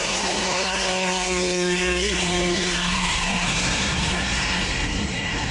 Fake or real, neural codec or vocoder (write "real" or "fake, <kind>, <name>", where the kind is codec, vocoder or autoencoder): fake, codec, SNAC